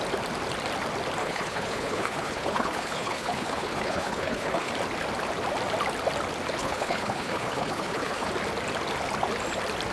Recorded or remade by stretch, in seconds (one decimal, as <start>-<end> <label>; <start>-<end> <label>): 0.0-1.2 recorded; 1.2-4.7 remade; 4.7-6.6 recorded; 6.6-8.3 remade; 8.3-9.9 recorded